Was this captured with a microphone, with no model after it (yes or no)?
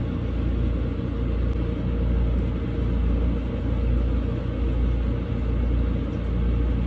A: yes